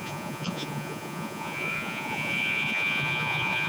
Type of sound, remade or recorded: remade